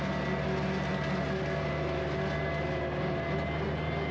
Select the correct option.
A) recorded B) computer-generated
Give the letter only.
A